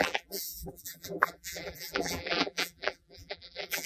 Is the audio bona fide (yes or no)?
no